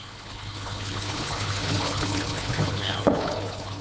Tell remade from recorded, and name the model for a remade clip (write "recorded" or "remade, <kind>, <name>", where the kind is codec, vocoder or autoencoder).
remade, codec, HILCodec